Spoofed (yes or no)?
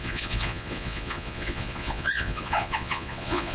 yes